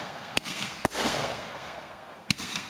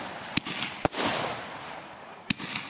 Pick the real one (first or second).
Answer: second